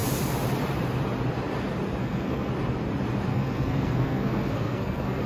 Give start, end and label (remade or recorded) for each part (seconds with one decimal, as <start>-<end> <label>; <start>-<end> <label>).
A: 0.0-2.0 recorded; 2.0-2.5 remade; 2.5-3.3 recorded; 3.3-5.3 remade